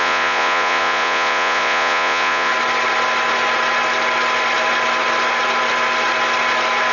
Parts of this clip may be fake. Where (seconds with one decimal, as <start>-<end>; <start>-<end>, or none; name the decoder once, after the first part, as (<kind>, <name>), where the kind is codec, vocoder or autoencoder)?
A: 0.0-2.5 (vocoder, Vocos)